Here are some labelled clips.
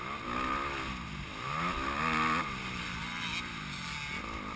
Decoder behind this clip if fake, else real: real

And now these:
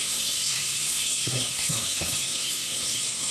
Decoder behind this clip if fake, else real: fake, codec, SNAC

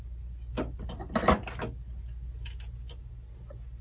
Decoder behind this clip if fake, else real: real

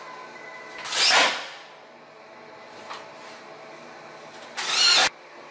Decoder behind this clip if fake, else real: real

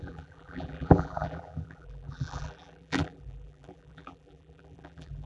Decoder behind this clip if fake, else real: fake, vocoder, BigVGAN v2